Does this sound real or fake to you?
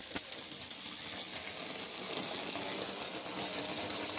real